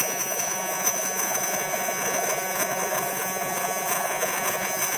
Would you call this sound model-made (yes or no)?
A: yes